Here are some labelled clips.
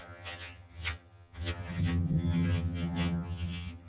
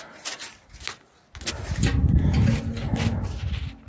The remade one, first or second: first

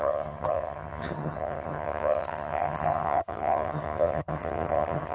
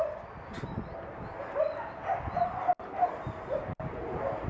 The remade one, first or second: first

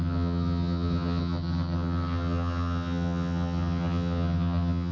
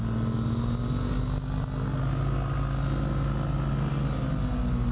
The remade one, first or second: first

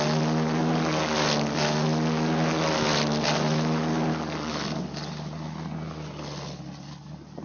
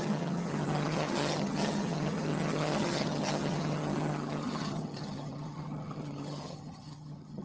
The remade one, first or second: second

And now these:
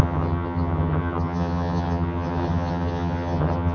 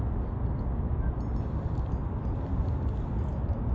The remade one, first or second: first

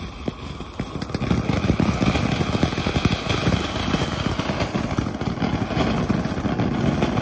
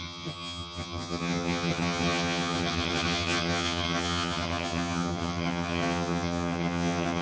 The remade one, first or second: second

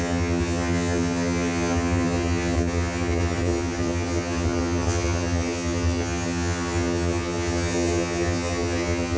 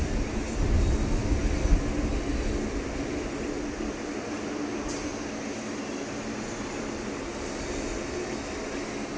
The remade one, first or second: first